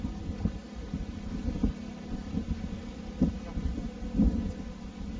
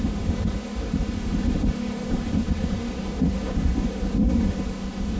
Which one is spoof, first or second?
second